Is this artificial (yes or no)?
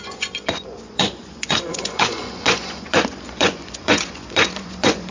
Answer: yes